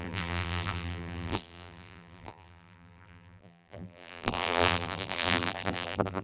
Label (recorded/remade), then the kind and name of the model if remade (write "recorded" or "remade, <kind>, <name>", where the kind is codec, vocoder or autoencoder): remade, vocoder, BigVGAN v2